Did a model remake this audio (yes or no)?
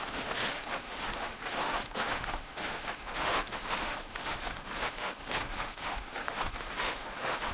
yes